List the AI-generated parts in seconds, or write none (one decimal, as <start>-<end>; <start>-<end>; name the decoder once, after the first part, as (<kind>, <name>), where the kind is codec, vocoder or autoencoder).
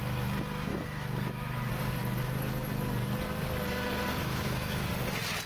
0.7-1.7 (autoencoder, DAC-VAE); 4.2-4.9